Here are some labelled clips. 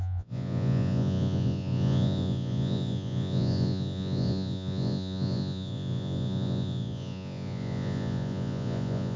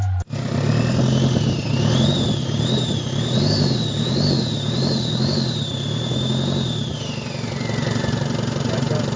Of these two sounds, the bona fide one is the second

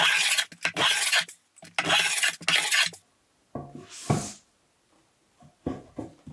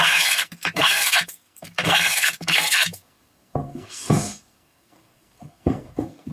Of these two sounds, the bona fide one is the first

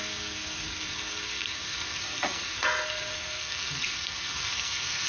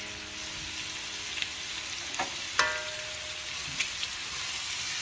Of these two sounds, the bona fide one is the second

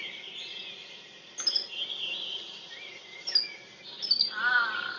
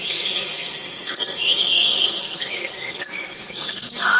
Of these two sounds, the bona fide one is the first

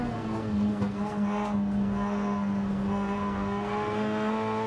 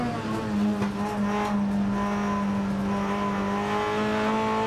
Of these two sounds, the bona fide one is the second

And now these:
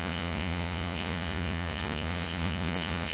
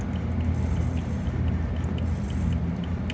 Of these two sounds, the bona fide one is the second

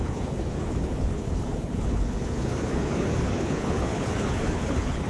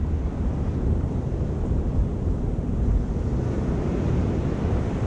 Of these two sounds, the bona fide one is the second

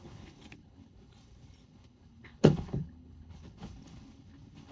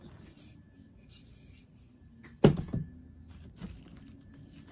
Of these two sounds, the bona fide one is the second